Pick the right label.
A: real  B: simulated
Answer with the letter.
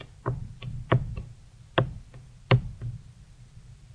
A